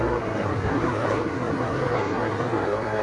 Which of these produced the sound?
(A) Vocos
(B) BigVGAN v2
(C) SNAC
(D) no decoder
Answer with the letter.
C